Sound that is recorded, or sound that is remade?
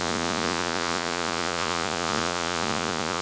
remade